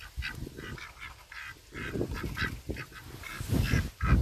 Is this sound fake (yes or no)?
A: no